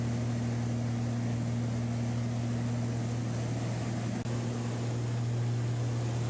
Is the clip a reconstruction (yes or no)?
no